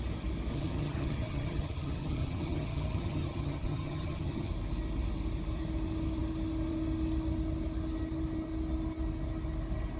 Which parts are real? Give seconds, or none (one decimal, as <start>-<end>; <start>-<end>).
0.0-0.5; 4.5-10.0